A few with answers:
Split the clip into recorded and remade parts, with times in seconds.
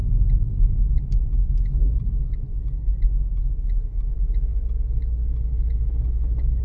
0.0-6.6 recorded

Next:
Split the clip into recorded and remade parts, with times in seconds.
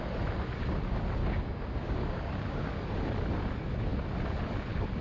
0.0-1.2 recorded; 1.2-2.8 remade; 2.8-5.0 recorded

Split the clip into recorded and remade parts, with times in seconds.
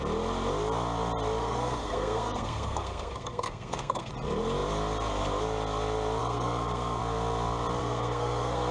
0.0-1.4 recorded; 1.4-4.1 remade; 4.1-6.2 recorded; 6.2-7.0 remade; 7.0-7.8 recorded; 7.8-8.7 remade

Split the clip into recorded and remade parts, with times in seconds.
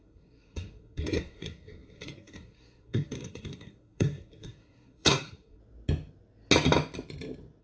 0.0-5.6 remade; 5.6-7.6 recorded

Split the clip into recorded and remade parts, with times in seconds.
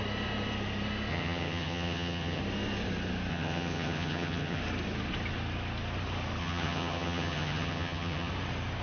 0.0-1.1 recorded; 1.1-2.4 remade; 2.4-3.3 recorded; 3.3-4.6 remade; 4.6-6.4 recorded; 6.4-8.3 remade; 8.3-8.8 recorded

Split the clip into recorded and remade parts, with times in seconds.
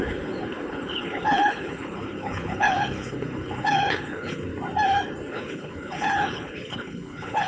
0.0-4.5 remade; 4.5-5.3 recorded; 5.3-7.5 remade